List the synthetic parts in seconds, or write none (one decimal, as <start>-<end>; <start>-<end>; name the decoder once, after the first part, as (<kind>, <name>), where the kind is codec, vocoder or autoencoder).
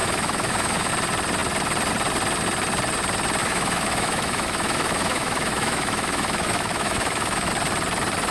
0.0-0.9 (autoencoder, DAC-VAE); 3.4-7.5